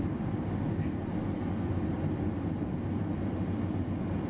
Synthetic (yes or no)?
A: no